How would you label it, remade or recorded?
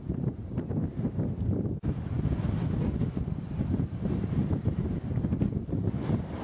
recorded